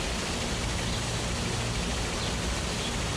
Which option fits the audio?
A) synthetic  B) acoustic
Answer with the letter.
B